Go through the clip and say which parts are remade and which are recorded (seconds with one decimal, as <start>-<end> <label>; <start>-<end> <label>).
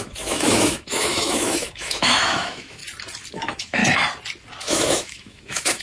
0.0-2.8 remade; 2.8-3.3 recorded; 3.3-3.8 remade; 3.8-4.6 recorded; 4.6-5.8 remade